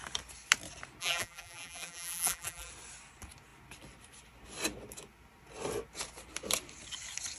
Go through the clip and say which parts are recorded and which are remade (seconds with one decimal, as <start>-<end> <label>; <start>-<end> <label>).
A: 0.0-1.0 recorded; 1.0-2.7 remade; 2.7-7.4 recorded